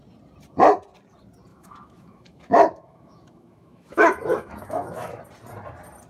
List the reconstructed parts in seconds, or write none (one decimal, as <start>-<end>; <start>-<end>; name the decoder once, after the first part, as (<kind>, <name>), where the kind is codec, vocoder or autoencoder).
1.5-5.2 (autoencoder, DAC-VAE)